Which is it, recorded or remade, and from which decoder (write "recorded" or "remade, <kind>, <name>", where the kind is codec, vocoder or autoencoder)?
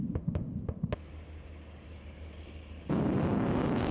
recorded